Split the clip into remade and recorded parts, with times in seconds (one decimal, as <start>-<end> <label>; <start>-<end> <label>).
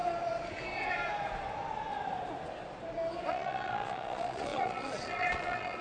0.0-3.3 recorded; 3.3-5.8 remade